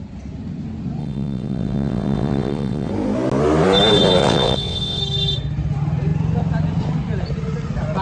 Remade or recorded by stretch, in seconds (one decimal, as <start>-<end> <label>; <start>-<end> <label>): 0.0-1.0 recorded; 1.0-2.9 remade; 2.9-4.2 recorded; 4.2-5.0 remade; 5.0-8.0 recorded